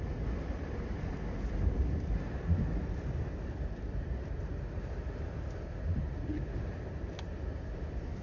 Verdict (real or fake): real